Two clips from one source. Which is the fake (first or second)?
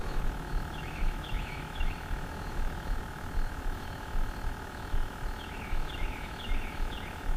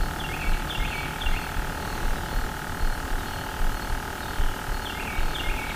first